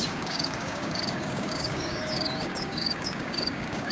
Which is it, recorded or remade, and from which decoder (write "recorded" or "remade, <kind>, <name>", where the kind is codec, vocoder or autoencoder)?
remade, codec, DAC